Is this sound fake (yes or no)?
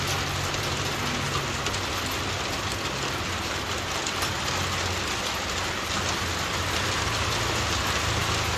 no